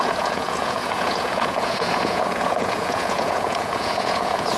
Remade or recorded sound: remade